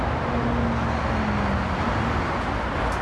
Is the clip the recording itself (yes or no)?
yes